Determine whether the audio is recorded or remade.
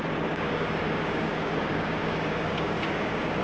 remade